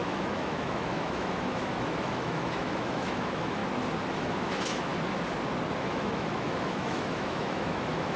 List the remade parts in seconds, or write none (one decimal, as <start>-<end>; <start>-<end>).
0.0-3.6; 4.2-4.9; 5.8-8.2